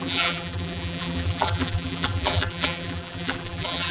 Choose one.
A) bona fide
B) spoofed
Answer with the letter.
B